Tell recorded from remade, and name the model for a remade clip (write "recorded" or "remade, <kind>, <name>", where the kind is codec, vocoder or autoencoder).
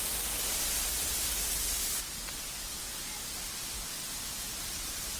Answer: recorded